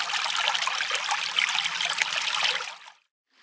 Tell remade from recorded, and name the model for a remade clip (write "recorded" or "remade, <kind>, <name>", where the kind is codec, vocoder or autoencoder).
recorded